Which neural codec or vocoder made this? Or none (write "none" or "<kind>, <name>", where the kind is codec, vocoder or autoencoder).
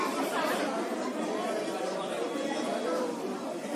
vocoder, BigVGAN v2